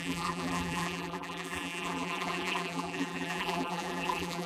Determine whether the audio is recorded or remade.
remade